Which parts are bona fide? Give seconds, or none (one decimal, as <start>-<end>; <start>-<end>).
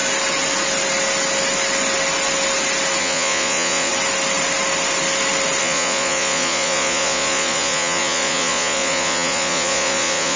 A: 0.0-3.0; 3.9-5.6